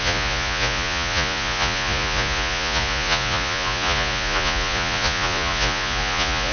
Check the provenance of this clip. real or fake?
fake